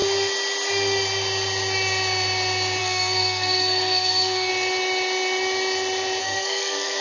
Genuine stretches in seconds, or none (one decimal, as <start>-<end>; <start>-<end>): 0.0-2.8; 4.5-6.2